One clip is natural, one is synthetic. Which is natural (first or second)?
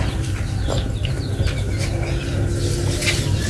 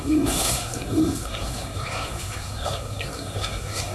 first